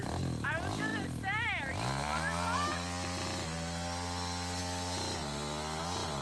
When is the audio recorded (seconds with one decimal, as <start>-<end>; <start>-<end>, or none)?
0.0-6.2